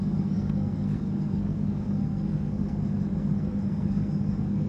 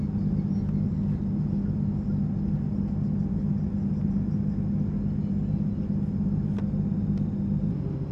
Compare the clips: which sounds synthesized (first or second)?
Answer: first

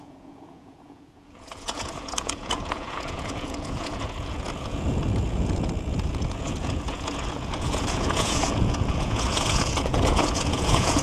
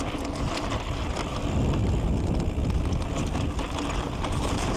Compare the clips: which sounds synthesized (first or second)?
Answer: first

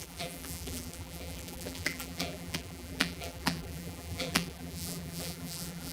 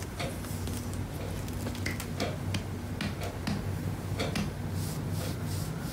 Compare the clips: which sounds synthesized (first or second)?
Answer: first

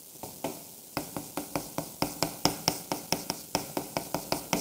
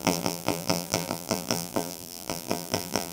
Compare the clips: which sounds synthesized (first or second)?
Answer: second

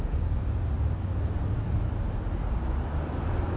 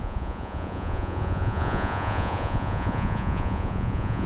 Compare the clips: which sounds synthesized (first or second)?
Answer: second